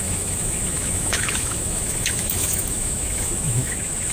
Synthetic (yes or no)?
yes